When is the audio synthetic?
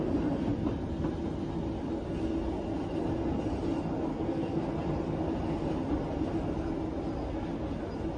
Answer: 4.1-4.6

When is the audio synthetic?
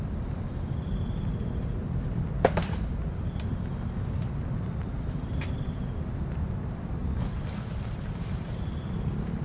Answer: 0.0-3.7; 4.2-9.4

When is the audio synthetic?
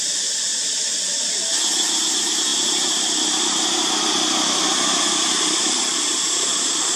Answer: 2.5-3.6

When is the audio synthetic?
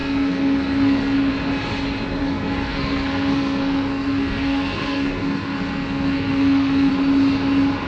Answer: 0.0-1.3; 2.2-6.9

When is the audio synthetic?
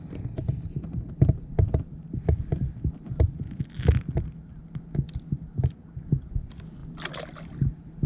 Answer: none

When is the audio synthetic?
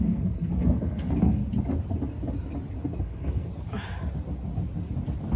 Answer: 0.0-1.4; 3.0-3.5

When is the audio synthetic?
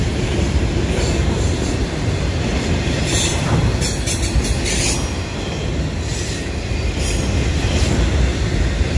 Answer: 0.0-3.7; 7.8-9.0